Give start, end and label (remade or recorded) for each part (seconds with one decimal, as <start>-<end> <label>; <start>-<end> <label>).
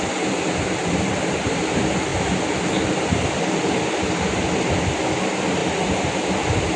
0.0-6.8 recorded